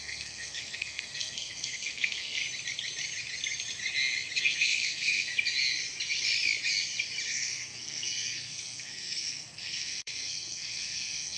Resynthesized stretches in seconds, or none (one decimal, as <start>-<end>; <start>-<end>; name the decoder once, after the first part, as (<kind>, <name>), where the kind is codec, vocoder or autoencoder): 0.0-2.4 (codec, SNAC); 4.4-5.3; 7.3-11.4